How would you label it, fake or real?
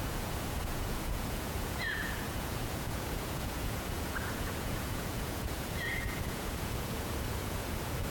fake